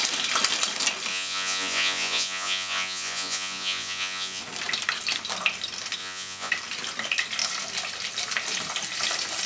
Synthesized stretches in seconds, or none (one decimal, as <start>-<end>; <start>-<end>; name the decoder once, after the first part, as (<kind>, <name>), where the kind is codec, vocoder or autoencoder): 1.1-4.4 (vocoder, Vocos); 6.0-6.5